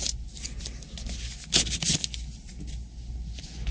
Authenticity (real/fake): real